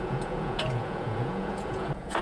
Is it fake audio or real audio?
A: fake